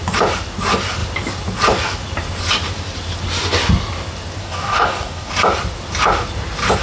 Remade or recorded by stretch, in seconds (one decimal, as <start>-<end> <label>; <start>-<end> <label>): 0.0-4.4 recorded; 4.4-5.3 remade; 5.3-6.8 recorded